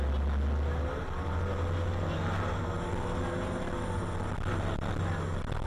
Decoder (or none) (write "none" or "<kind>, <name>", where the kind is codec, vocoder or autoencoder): none